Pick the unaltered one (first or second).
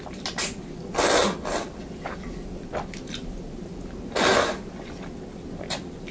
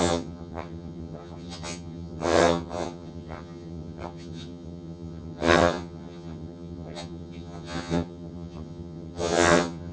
first